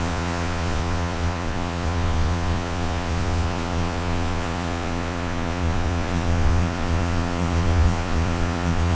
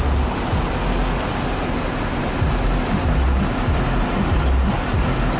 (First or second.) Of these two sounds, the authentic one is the second